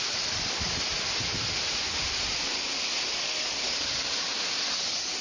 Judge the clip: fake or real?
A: real